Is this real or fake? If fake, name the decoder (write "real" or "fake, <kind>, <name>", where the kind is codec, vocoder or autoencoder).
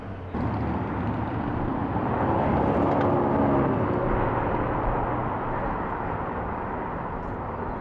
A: real